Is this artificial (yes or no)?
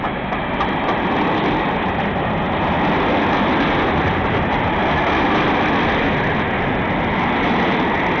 no